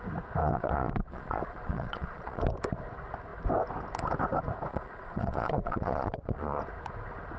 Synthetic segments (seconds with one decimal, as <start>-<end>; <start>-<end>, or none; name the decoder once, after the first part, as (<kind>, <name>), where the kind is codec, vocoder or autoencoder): 0.4-2.4 (vocoder, Vocos); 4.7-6.6